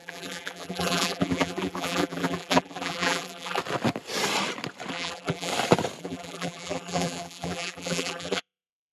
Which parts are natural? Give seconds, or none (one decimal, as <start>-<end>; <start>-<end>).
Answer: 3.6-4.9; 5.5-6.0